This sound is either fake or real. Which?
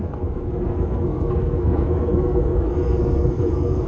fake